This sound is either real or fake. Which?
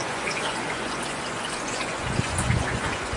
fake